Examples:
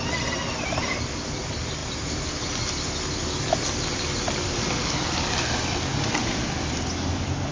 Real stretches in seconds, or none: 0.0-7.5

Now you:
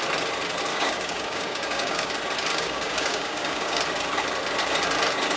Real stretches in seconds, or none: 0.0-0.7; 2.1-2.5; 3.8-5.4

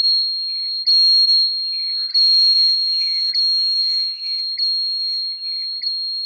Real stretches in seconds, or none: 0.0-2.1; 3.3-3.8; 4.4-6.3